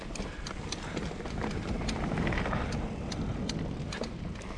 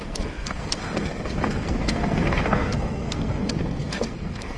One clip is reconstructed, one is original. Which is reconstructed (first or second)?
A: second